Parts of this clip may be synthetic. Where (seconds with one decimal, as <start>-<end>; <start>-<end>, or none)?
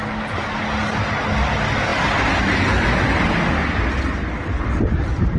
none